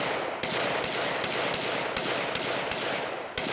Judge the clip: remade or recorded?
recorded